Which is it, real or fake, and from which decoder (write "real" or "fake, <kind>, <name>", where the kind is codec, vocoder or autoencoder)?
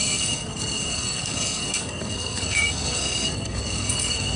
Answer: fake, codec, SNAC